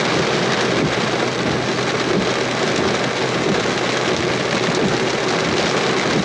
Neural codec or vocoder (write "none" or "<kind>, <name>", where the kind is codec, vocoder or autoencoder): none